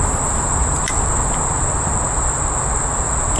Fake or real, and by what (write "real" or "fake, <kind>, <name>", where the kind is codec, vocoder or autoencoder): real